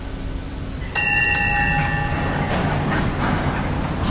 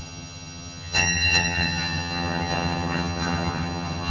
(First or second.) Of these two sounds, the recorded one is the first